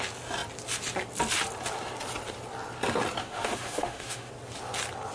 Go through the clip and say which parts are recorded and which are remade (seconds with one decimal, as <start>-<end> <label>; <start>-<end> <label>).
0.0-3.2 recorded; 3.2-4.3 remade; 4.3-5.1 recorded